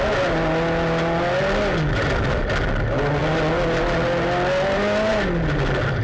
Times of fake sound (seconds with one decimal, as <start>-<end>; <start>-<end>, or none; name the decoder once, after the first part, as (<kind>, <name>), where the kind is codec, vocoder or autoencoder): none